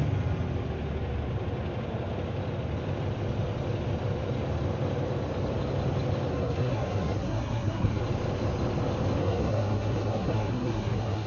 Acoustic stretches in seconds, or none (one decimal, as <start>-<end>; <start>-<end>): 0.0-6.3; 8.0-9.2